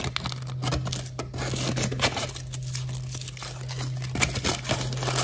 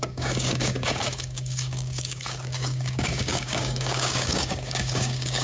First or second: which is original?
first